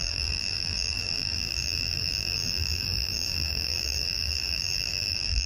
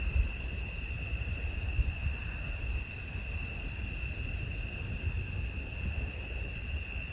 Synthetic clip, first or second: first